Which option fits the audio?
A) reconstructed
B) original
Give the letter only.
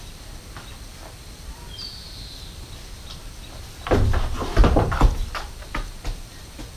B